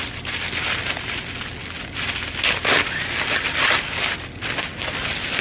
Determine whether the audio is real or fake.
real